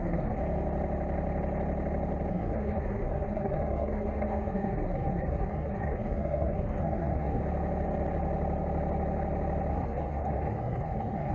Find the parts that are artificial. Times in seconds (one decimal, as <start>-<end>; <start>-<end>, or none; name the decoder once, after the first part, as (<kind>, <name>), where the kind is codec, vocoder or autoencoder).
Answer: 0.0-0.4 (codec, SNAC); 2.3-7.4; 9.7-11.3